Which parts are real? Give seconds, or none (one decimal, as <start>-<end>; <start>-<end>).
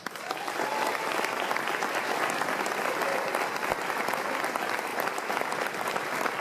0.0-4.9